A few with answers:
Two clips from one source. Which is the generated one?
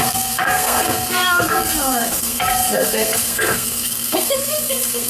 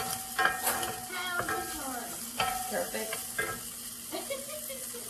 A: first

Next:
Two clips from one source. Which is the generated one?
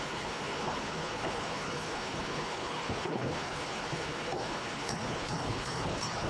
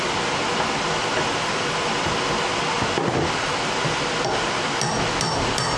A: first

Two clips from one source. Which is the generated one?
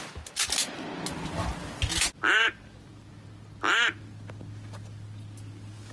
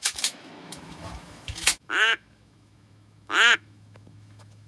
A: second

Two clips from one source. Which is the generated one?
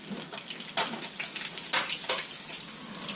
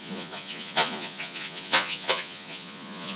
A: second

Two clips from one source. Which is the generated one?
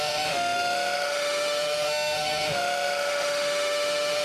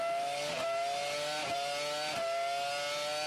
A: first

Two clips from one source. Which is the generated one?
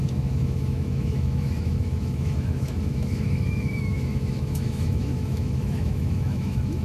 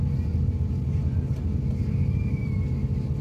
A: first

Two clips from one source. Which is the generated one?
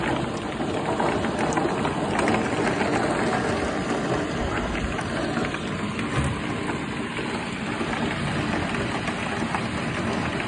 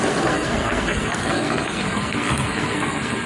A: second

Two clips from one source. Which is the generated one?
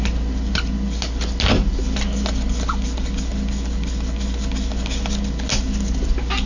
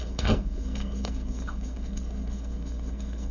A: second